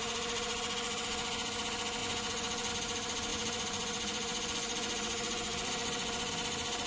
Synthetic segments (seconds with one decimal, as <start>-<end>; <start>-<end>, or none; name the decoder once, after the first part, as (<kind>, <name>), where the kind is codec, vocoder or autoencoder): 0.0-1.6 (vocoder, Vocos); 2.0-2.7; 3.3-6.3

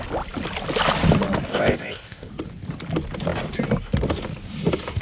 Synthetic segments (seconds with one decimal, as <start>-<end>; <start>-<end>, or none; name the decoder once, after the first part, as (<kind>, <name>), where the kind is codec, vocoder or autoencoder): 1.5-2.3 (codec, ZipCodec)

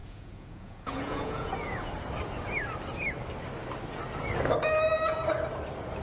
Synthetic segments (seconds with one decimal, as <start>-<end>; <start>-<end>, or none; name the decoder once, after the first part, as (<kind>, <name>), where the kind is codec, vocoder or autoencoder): 0.0-1.9 (vocoder, Vocos)